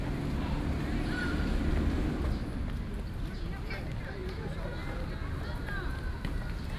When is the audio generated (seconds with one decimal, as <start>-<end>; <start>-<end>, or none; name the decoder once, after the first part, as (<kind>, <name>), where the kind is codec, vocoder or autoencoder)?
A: none

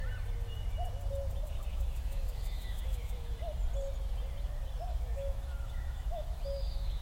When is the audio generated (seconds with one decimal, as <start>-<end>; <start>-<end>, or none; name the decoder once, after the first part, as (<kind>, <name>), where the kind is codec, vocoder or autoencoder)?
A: 1.7-3.4 (autoencoder, DAC-VAE); 4.9-7.0

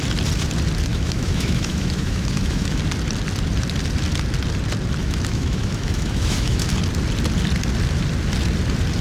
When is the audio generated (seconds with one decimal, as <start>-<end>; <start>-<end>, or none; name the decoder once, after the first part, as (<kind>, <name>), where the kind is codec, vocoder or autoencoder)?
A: 0.9-2.8 (autoencoder, DAC-VAE); 5.0-6.7

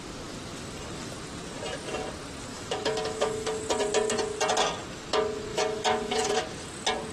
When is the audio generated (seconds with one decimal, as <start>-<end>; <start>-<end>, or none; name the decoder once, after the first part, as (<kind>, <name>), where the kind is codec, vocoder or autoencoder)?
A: 2.5-3.6 (autoencoder, DAC-VAE); 5.5-6.4

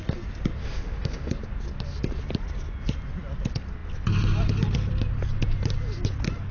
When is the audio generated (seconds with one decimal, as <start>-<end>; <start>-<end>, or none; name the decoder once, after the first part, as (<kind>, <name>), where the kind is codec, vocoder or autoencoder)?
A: 0.6-1.3 (autoencoder, DAC-VAE)

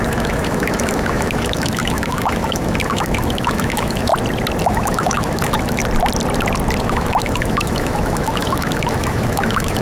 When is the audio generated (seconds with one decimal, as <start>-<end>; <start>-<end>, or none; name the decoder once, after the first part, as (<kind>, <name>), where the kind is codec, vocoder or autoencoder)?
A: 0.0-4.1 (autoencoder, DAC-VAE); 4.6-5.8; 6.8-9.8